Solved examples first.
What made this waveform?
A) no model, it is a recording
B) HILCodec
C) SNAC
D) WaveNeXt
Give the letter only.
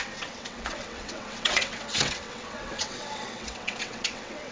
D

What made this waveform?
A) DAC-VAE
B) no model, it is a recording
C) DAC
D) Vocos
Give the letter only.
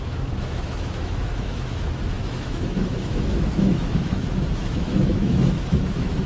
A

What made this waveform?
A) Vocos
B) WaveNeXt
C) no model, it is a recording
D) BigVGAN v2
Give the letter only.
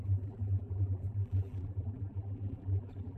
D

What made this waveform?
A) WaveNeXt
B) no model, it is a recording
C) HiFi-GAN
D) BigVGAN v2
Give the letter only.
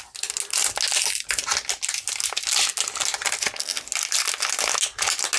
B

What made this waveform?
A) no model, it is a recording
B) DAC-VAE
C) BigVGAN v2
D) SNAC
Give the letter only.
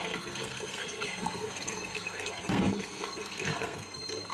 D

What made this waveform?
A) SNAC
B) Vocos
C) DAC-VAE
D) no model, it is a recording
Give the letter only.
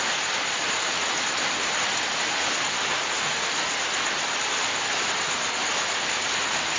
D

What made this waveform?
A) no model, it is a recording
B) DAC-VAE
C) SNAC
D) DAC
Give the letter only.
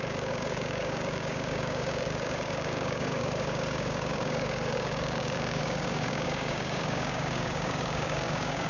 D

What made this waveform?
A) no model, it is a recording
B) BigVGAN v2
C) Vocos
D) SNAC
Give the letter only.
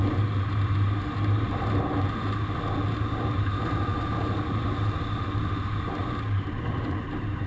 B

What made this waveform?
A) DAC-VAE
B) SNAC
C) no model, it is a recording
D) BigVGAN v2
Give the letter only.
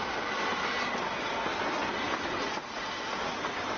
C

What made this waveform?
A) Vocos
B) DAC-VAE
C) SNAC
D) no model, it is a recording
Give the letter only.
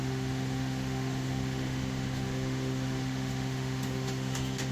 B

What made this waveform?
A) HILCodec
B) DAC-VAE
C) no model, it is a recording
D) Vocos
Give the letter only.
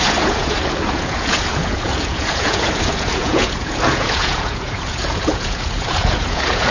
D